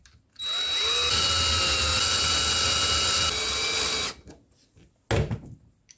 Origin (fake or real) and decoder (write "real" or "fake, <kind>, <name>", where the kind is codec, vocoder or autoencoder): real